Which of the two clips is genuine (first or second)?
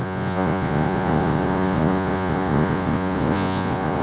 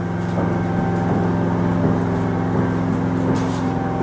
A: second